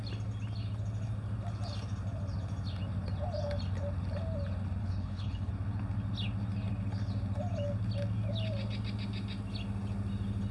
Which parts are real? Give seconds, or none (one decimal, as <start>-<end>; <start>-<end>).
0.0-4.8; 5.5-10.5